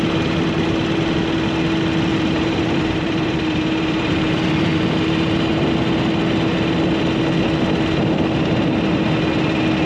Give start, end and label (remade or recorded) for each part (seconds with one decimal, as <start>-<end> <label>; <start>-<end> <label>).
0.0-2.1 recorded; 2.1-5.7 remade; 5.7-9.9 recorded